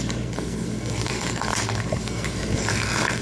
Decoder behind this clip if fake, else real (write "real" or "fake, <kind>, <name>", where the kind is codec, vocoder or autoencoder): fake, codec, SNAC